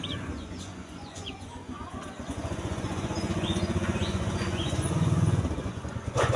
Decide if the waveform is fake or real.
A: fake